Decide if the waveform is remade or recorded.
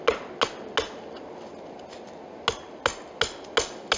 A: recorded